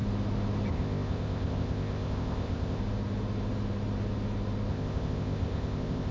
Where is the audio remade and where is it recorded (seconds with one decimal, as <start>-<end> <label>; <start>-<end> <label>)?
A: 0.0-0.7 recorded; 0.7-2.8 remade; 2.8-4.7 recorded; 4.7-6.1 remade